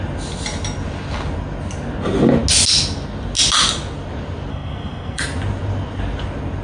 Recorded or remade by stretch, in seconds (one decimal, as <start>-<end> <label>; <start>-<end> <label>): 0.0-4.5 recorded; 4.5-5.2 remade; 5.2-6.6 recorded